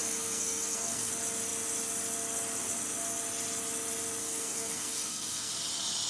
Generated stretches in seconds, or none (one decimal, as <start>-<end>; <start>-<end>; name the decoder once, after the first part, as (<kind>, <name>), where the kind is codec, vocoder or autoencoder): 0.0-1.1 (codec, SNAC); 4.2-5.5